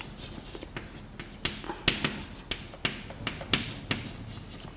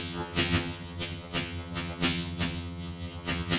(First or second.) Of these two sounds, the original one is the first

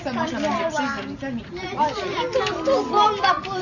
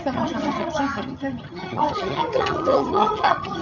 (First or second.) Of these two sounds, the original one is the first